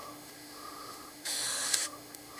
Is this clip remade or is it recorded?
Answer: remade